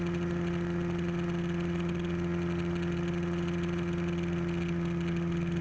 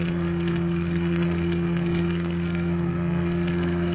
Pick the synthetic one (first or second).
second